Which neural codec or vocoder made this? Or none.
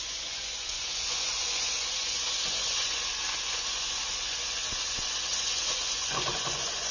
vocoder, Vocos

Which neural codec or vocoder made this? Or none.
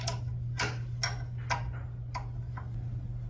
none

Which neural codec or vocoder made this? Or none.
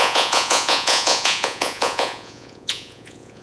vocoder, Vocos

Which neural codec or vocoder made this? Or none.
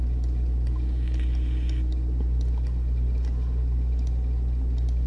none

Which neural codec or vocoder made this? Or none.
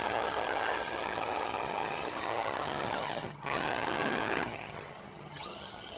vocoder, HiFi-GAN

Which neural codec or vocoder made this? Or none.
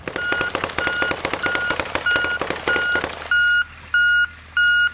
none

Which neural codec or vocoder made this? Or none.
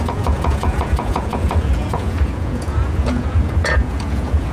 vocoder, Vocos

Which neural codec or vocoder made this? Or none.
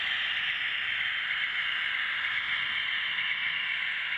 none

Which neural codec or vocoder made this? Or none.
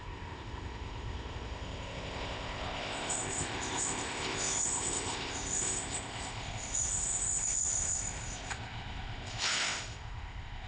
codec, ZipCodec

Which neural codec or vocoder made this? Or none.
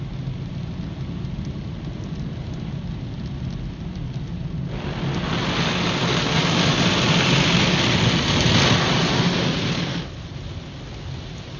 none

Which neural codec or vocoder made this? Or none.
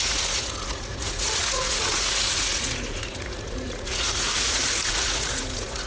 vocoder, Vocos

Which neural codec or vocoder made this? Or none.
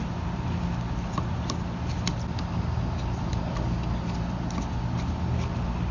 none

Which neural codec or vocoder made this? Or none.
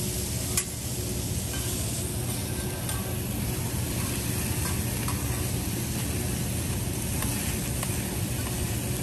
none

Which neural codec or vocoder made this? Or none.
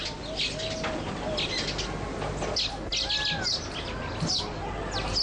none